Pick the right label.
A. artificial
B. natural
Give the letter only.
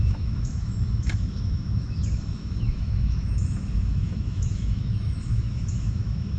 A